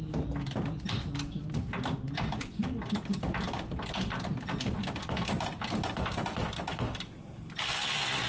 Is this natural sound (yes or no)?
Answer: yes